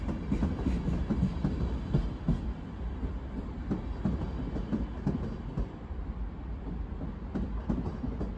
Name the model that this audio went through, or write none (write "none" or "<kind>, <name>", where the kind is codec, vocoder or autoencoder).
none